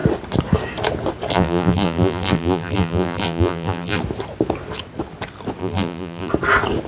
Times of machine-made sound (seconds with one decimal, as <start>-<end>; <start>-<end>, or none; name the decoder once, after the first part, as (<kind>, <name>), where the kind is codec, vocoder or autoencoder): 1.3-4.0 (vocoder, BigVGAN v2); 5.6-6.3